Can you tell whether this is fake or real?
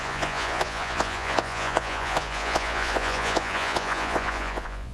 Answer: fake